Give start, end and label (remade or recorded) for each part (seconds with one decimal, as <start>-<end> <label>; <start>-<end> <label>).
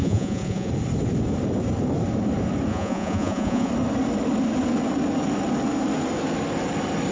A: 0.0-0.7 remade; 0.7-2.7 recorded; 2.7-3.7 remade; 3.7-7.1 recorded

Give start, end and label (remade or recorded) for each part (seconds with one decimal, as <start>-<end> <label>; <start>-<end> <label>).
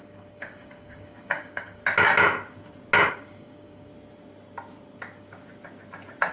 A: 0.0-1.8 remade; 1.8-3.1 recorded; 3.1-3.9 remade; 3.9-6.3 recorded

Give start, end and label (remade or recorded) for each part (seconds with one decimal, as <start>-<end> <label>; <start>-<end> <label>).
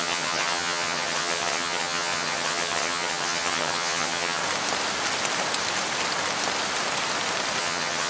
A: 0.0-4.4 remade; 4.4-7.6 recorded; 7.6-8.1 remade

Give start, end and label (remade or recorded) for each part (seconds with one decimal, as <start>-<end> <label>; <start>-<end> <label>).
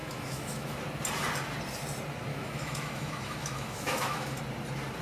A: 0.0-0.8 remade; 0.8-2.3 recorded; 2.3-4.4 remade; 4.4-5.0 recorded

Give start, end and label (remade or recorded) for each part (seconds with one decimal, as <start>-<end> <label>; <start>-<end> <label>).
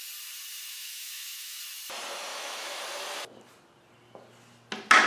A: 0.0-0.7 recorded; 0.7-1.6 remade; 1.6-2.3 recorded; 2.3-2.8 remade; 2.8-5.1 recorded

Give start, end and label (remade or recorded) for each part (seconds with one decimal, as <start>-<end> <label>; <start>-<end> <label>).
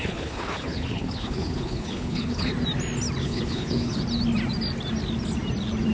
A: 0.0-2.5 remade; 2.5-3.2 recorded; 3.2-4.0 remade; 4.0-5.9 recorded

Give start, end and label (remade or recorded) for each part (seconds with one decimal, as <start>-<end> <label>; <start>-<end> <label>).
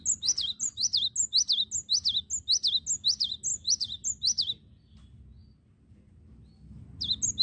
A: 0.0-7.4 recorded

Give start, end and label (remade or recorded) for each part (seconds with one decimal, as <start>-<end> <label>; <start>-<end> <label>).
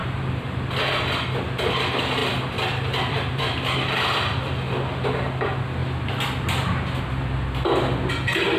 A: 0.0-1.3 remade; 1.3-2.2 recorded; 2.2-4.4 remade; 4.4-8.6 recorded